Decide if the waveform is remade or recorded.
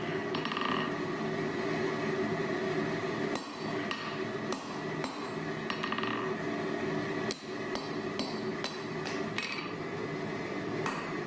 recorded